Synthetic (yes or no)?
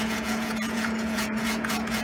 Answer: yes